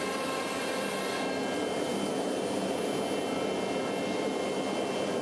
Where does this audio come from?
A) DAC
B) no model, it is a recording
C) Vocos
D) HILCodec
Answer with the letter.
B